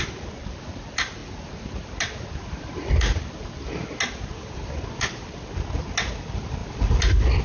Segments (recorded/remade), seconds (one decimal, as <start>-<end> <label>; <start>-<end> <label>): 0.0-7.4 recorded